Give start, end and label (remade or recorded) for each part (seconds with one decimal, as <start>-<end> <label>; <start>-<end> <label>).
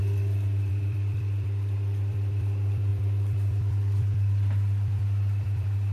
0.0-5.9 remade